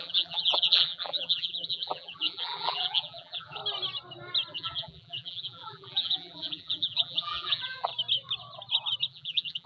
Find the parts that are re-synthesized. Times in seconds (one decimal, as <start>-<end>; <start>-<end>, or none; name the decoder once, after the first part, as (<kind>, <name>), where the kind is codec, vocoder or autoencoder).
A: 0.0-3.6 (vocoder, BigVGAN v2); 4.5-7.9; 9.1-9.7